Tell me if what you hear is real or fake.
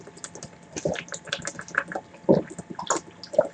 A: real